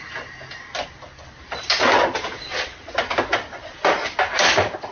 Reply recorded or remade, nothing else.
recorded